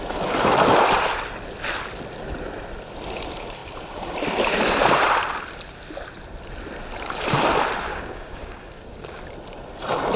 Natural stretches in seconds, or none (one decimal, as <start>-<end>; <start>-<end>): 0.0-7.9; 9.2-10.2